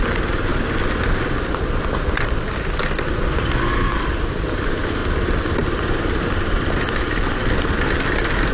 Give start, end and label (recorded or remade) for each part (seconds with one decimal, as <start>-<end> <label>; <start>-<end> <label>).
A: 0.0-8.5 recorded